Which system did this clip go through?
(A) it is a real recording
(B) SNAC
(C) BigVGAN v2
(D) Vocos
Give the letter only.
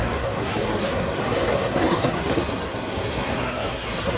B